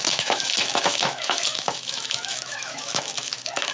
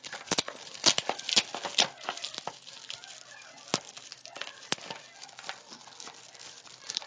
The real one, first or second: second